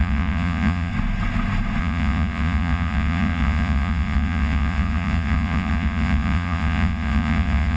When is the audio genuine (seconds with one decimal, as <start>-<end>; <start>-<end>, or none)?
0.9-1.8